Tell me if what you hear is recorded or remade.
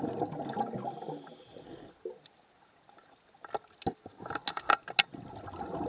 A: recorded